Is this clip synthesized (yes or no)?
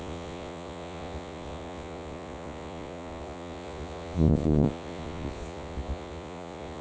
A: yes